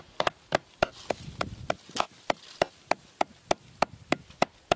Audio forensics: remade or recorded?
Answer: recorded